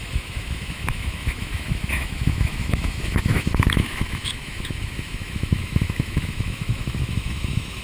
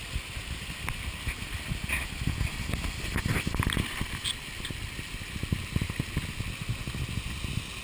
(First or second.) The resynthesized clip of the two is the first